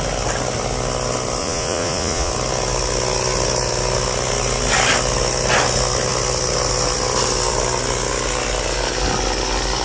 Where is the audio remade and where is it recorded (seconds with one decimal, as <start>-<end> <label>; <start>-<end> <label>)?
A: 0.0-1.4 recorded; 1.4-2.3 remade; 2.3-9.8 recorded